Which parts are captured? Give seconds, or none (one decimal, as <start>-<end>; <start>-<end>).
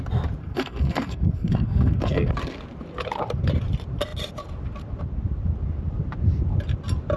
0.0-0.4; 2.3-7.2